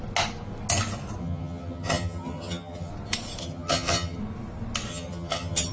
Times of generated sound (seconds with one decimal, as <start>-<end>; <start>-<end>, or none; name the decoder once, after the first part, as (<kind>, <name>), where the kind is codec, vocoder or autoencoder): 1.2-2.9 (vocoder, HiFi-GAN); 3.4-4.2; 4.9-5.7